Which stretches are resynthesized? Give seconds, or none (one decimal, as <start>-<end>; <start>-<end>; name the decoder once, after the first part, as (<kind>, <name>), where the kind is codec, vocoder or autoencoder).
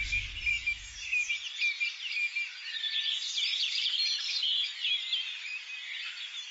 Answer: 0.5-1.3 (autoencoder, DAC-VAE)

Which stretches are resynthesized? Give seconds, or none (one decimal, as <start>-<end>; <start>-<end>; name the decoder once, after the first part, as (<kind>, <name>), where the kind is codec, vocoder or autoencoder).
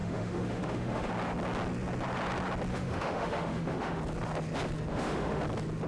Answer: 0.0-1.1 (autoencoder, DAC-VAE); 2.7-4.0; 4.9-5.4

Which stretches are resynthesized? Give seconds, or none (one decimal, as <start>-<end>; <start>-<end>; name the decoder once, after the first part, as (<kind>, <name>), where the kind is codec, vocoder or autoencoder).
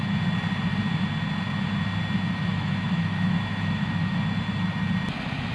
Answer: 2.5-4.2 (autoencoder, DAC-VAE)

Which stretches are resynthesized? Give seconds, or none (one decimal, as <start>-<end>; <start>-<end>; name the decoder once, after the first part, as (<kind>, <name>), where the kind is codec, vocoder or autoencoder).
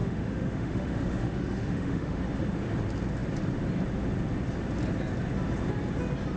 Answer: 0.0-2.2 (autoencoder, DAC-VAE)